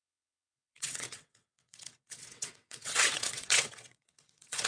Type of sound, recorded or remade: remade